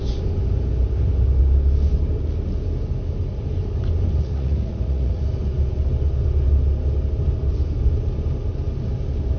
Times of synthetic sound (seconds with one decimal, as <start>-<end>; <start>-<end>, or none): 4.2-5.2